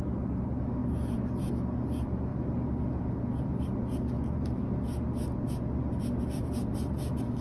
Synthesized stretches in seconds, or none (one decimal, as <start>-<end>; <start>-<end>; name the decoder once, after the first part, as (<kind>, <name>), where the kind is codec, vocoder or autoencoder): none